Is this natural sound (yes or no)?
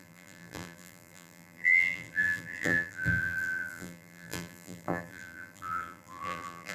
no